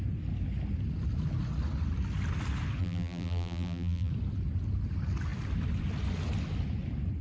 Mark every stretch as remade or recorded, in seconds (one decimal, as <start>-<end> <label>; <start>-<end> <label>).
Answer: 0.0-2.8 recorded; 2.8-4.1 remade; 4.1-7.2 recorded